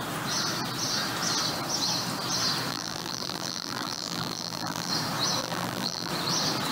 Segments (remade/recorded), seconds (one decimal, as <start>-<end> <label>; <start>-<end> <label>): 0.0-2.7 recorded; 2.7-4.9 remade; 4.9-5.4 recorded; 5.4-6.1 remade; 6.1-6.7 recorded